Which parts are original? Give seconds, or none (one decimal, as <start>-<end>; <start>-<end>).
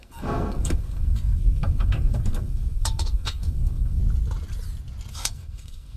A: 4.0-5.1